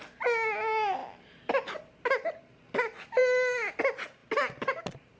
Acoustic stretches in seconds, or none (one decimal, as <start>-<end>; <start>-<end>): 0.0-5.2

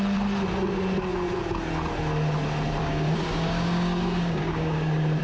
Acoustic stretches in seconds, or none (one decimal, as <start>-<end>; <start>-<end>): 0.0-2.8

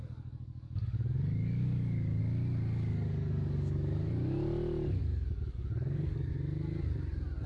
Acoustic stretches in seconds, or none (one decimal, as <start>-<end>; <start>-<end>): 2.2-2.9; 4.1-5.0; 6.3-7.5

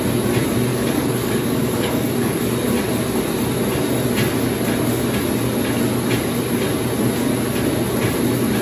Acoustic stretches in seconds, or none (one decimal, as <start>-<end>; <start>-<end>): 0.0-0.7; 2.4-8.6

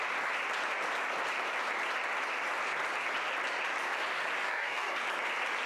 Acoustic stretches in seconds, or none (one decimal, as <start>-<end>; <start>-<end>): 0.0-4.4; 5.0-5.7